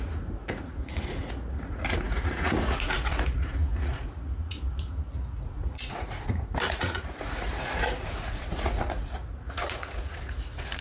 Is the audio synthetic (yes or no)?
yes